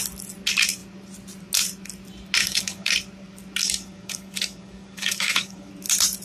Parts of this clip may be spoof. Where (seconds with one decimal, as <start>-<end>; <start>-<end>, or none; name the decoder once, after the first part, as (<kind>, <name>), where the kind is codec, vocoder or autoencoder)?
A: 2.4-2.9 (codec, DAC); 3.6-5.7